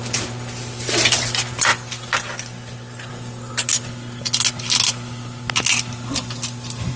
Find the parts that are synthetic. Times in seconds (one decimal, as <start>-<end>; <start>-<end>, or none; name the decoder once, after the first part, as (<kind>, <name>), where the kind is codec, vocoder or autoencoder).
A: none